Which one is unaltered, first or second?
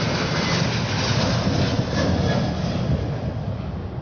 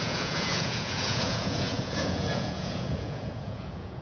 first